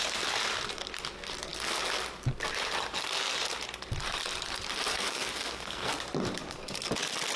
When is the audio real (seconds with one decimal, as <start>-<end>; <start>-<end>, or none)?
0.0-4.9; 6.0-7.4